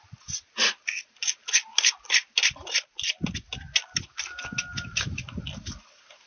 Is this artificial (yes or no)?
no